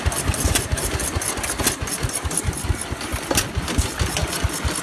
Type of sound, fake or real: real